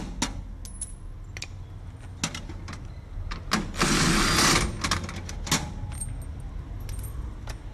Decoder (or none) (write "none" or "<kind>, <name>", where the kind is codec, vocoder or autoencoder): none